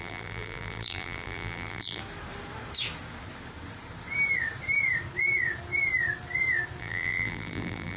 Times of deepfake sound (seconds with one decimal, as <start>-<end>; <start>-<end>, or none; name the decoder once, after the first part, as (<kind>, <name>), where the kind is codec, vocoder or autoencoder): 0.0-2.0 (vocoder, BigVGAN v2); 6.8-8.0